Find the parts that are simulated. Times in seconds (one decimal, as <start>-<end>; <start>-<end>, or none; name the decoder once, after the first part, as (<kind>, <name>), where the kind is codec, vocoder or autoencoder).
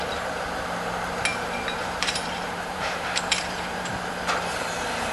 1.3-4.2 (vocoder, BigVGAN v2)